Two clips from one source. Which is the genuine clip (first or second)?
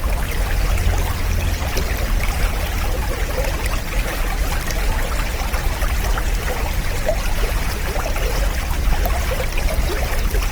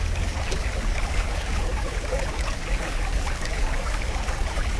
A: first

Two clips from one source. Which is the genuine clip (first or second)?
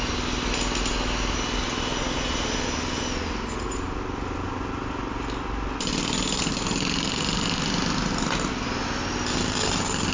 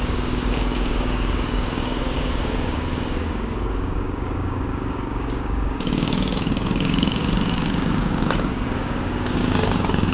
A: first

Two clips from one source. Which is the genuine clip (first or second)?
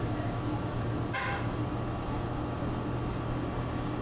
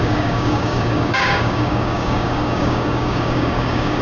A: first